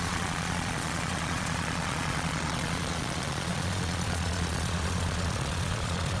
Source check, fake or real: fake